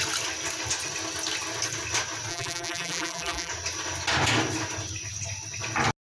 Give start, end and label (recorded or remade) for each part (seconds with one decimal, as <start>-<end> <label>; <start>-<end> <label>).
0.0-2.3 recorded; 2.3-3.5 remade; 3.5-6.2 recorded